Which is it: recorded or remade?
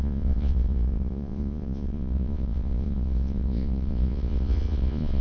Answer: remade